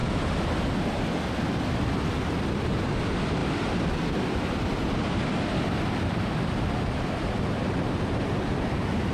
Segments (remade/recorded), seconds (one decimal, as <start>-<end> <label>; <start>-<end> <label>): 0.0-9.1 recorded